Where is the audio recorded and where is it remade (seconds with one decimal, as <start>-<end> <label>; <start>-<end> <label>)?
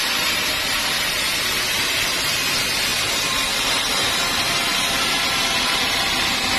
0.0-6.6 recorded